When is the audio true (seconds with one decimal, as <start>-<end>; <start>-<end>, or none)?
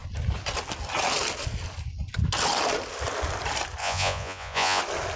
0.0-3.8; 4.8-5.2